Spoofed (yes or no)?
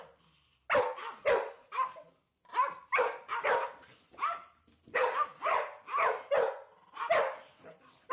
no